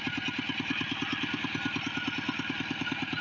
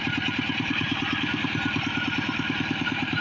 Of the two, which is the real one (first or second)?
first